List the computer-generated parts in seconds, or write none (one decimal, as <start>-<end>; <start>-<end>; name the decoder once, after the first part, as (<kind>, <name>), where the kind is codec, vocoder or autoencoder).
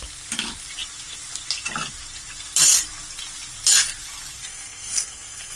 4.4-5.6 (codec, SNAC)